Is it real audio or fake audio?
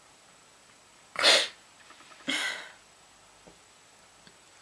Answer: real